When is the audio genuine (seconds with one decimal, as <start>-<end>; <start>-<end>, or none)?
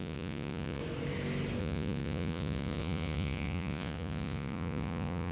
0.8-1.6